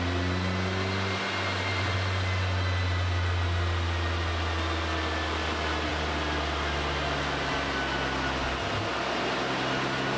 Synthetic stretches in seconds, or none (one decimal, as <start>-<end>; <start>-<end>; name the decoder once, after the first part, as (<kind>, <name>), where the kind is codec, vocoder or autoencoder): none